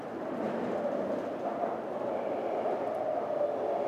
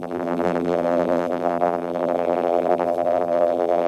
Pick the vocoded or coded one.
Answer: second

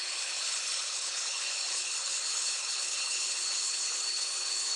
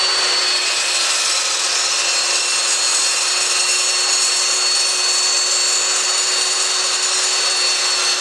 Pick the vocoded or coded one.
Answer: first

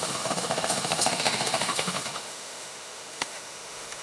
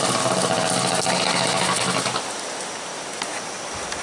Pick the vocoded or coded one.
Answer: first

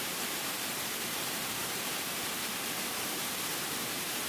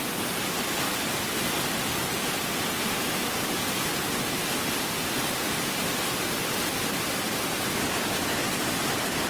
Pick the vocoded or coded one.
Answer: first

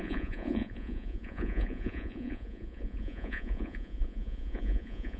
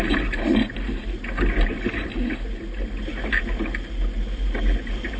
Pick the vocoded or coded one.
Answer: first